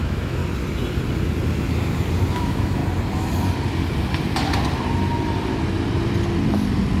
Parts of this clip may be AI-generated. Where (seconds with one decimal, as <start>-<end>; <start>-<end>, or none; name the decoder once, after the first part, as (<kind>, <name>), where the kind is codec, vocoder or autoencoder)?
0.0-0.4 (autoencoder, DAC-VAE); 2.3-2.8